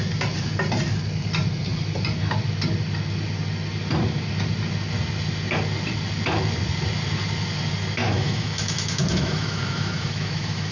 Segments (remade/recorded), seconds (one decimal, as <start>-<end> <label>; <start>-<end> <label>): 0.0-8.0 recorded; 8.0-10.7 remade